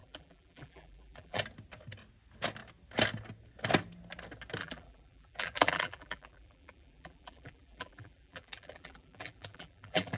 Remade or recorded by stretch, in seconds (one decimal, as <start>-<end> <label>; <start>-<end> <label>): 0.0-1.4 remade; 1.4-4.6 recorded; 4.6-10.2 remade